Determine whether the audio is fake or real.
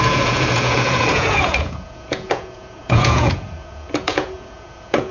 fake